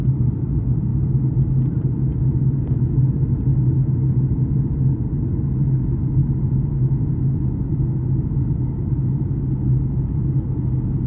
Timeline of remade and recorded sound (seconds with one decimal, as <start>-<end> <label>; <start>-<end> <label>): 0.0-6.2 recorded; 6.2-7.1 remade; 7.1-11.1 recorded

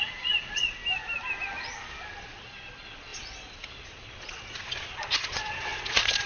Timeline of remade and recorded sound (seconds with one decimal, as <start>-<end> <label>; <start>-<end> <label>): 0.0-0.8 remade; 0.8-2.2 recorded; 2.2-6.3 remade